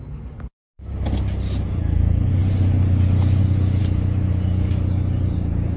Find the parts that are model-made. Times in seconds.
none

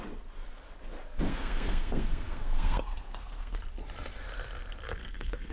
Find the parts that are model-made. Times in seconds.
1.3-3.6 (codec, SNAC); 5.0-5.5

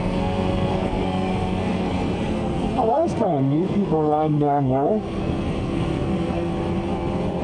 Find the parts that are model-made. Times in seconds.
0.0-6.5 (codec, SNAC)